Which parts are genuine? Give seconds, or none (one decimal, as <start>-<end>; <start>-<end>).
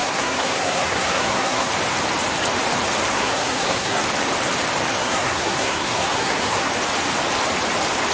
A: 1.7-3.1; 4.0-5.0; 6.7-8.1